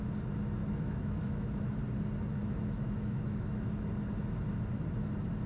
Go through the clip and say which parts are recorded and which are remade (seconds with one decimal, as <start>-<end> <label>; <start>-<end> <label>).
0.0-0.6 recorded; 0.6-1.8 remade; 1.8-2.4 recorded; 2.4-3.6 remade; 3.6-5.5 recorded